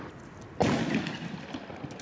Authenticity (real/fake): real